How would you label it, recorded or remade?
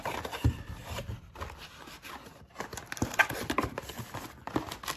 recorded